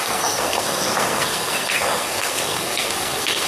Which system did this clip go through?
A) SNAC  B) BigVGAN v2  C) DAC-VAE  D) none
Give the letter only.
A